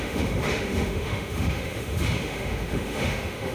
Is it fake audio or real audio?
fake